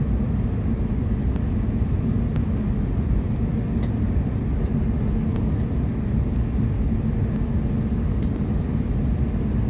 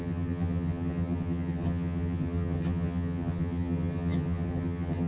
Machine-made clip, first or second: second